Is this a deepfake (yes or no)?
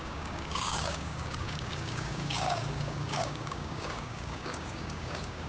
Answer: yes